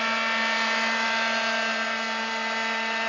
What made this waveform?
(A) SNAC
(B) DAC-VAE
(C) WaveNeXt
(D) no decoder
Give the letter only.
D